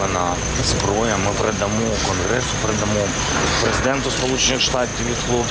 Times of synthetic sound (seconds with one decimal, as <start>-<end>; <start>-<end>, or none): none